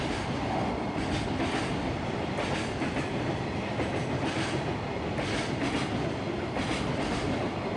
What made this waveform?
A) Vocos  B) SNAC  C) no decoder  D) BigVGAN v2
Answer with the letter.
C